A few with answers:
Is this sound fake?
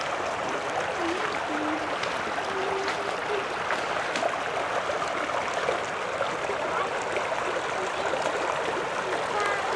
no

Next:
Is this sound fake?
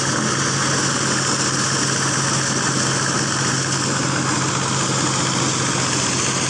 no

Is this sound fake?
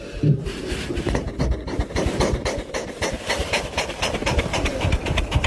yes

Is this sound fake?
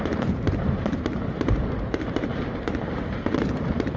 yes